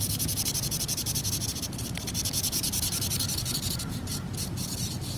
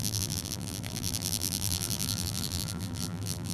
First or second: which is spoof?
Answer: second